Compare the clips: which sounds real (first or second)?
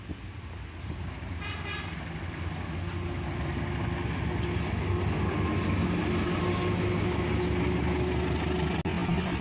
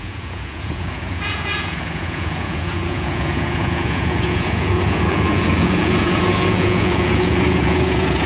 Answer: first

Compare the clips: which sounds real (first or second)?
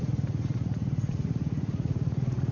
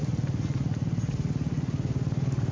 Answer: second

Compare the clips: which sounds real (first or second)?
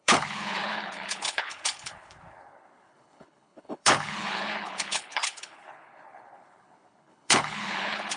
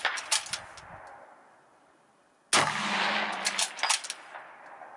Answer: second